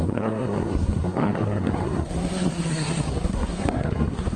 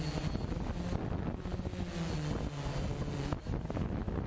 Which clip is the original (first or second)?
second